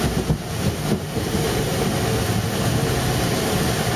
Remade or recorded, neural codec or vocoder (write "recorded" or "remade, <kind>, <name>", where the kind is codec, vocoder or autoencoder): recorded